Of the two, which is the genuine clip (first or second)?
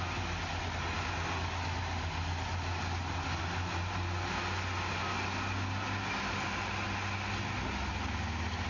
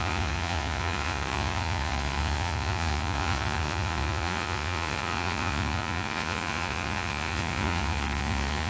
first